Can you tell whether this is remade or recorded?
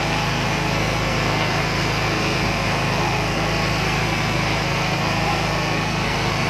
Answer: remade